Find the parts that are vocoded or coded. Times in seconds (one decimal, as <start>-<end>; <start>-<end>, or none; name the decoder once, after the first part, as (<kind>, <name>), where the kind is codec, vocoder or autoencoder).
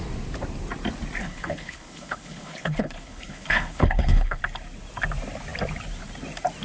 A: 1.2-4.4 (codec, HILCodec)